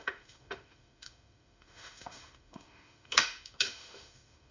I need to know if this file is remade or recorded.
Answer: remade